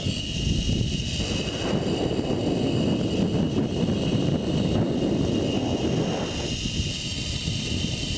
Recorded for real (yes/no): yes